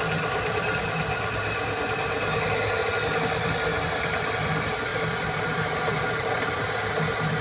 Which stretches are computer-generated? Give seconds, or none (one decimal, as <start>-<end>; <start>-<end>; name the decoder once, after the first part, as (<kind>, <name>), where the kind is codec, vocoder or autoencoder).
none